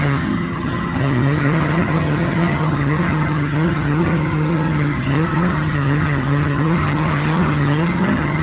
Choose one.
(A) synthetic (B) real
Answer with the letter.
A